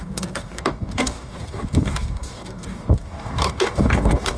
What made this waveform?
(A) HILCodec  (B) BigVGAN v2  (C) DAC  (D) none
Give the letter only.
C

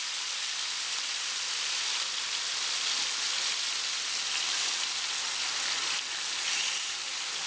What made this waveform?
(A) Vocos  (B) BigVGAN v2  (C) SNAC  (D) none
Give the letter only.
D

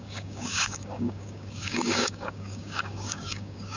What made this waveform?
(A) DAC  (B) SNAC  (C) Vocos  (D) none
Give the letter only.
A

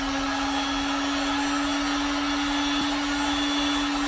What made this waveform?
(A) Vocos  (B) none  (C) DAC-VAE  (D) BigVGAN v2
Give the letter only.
B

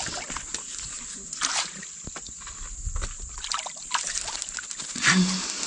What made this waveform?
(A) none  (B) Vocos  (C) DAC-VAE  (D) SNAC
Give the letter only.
A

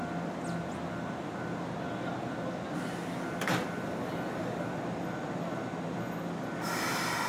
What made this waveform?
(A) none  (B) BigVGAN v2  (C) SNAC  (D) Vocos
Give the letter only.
A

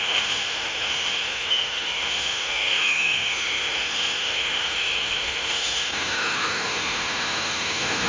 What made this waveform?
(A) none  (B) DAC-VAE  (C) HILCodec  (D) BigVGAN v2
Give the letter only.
B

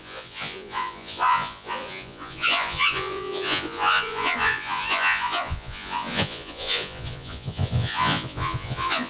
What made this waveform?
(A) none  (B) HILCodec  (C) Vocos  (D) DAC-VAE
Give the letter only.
C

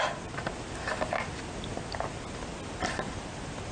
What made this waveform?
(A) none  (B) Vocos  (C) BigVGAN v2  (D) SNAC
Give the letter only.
A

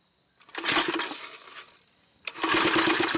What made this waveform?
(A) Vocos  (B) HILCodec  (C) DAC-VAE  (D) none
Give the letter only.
D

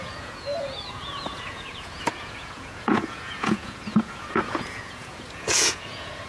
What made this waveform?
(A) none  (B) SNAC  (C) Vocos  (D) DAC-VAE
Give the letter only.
C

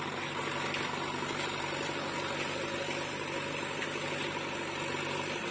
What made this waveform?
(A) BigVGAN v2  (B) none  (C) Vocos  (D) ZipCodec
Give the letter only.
B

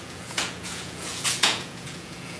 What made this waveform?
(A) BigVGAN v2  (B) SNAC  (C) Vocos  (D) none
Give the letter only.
C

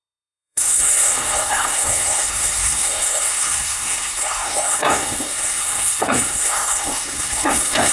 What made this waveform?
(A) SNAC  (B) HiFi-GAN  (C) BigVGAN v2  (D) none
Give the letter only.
A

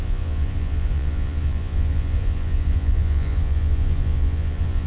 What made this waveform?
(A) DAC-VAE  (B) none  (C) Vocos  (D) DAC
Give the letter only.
C